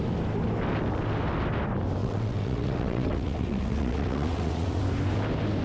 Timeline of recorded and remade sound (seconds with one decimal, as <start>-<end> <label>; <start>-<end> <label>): 0.0-2.0 recorded; 2.0-4.8 remade; 4.8-5.6 recorded

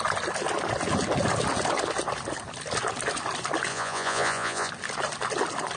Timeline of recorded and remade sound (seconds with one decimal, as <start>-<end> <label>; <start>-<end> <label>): 0.0-3.7 recorded; 3.7-4.7 remade; 4.7-5.8 recorded

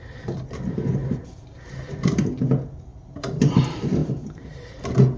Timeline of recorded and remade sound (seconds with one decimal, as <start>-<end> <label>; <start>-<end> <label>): 0.0-1.0 recorded; 1.0-2.2 remade; 2.2-4.0 recorded; 4.0-4.8 remade; 4.8-5.2 recorded

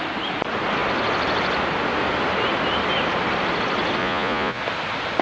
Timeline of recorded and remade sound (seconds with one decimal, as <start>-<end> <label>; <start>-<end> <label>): 0.0-4.0 recorded; 4.0-4.6 remade; 4.6-5.2 recorded

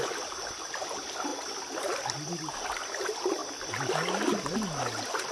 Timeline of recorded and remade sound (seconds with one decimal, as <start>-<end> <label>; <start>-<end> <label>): 0.0-5.3 recorded

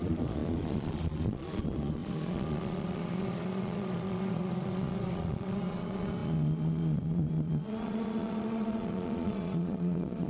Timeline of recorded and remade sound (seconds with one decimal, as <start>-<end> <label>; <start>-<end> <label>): 0.0-10.3 remade

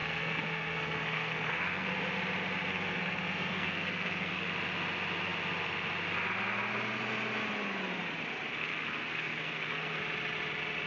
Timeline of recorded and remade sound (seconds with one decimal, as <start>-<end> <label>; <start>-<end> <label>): 0.0-1.9 remade; 1.9-2.7 recorded; 2.7-4.4 remade; 4.4-8.6 recorded; 8.6-10.0 remade; 10.0-10.9 recorded

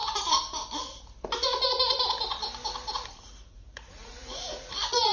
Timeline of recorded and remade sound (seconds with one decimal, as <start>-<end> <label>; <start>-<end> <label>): 0.0-3.1 recorded; 3.1-5.1 remade